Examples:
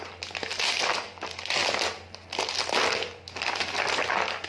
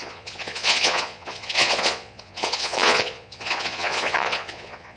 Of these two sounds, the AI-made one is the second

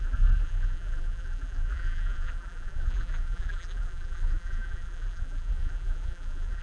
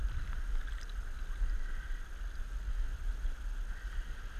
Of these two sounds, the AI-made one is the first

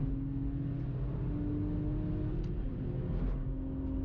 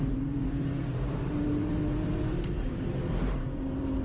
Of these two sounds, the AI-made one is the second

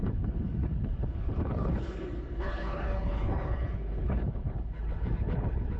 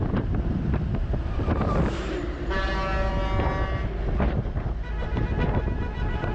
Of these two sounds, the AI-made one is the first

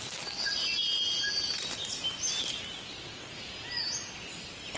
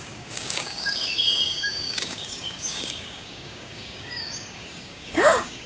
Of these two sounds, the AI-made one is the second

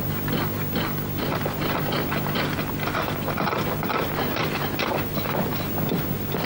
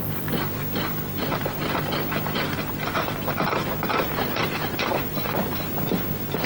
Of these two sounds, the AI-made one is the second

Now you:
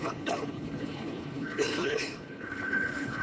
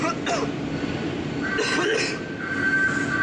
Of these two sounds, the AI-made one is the first